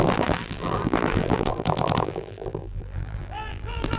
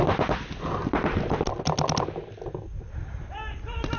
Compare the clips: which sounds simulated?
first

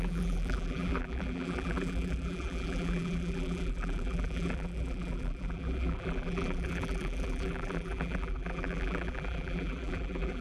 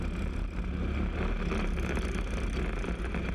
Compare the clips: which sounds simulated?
first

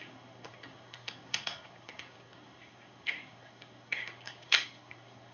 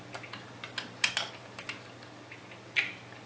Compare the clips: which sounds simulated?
first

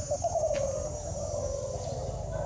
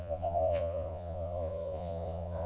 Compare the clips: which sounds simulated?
second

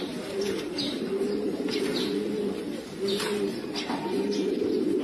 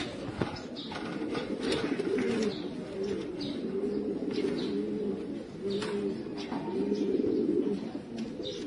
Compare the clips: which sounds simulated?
first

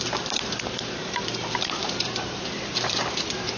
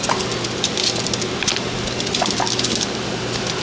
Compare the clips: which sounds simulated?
first